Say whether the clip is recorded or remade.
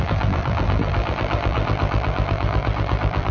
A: remade